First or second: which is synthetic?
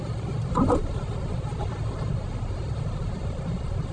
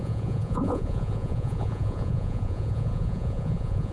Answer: second